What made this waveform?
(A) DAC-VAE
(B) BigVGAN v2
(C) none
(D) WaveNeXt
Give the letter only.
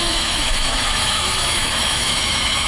A